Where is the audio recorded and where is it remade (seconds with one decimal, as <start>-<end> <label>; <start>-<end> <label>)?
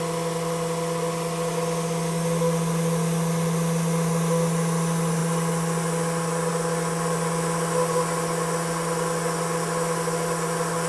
0.0-10.9 recorded